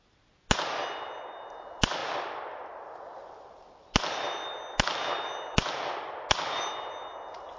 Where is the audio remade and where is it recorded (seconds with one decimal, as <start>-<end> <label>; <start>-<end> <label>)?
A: 0.0-7.6 recorded